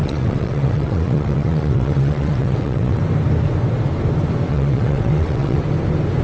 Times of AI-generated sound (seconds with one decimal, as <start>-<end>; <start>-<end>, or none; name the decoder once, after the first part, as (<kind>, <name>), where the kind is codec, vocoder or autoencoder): 0.0-3.0 (vocoder, WaveNeXt); 4.5-5.6